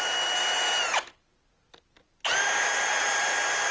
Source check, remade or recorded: recorded